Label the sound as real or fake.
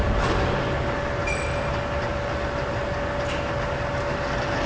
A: real